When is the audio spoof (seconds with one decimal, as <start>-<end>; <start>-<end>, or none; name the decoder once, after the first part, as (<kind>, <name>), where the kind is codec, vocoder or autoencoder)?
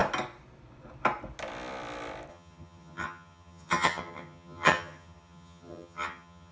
2.3-6.5 (vocoder, HiFi-GAN)